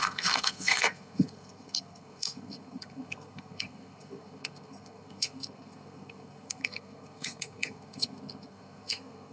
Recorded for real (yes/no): no